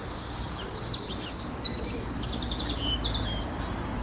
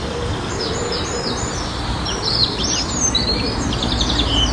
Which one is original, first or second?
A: first